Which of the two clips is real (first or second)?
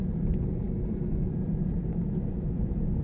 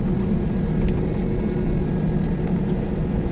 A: second